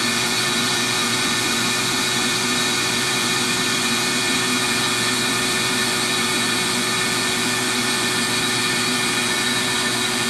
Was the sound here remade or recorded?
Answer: remade